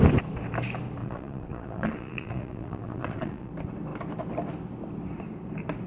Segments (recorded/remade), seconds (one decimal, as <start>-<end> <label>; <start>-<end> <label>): 0.0-1.0 recorded; 1.0-3.5 remade; 3.5-5.9 recorded